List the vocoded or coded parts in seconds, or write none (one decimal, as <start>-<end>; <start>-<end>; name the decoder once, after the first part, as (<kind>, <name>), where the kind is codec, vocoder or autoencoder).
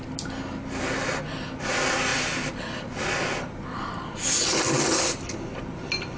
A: none